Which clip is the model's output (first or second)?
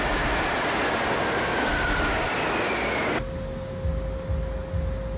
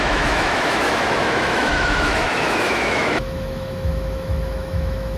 second